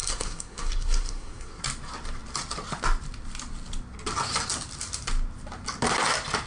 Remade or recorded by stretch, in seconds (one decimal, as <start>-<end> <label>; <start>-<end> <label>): 0.0-1.6 remade; 1.6-6.5 recorded